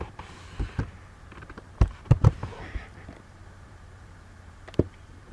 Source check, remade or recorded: remade